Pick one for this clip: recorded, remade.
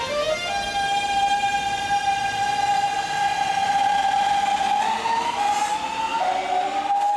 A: recorded